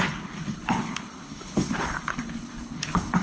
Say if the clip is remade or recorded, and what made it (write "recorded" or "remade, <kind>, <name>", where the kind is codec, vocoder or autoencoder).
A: remade, codec, HILCodec